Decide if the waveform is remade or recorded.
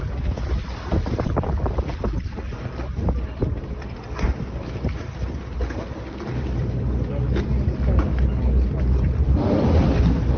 remade